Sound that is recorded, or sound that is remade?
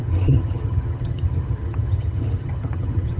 remade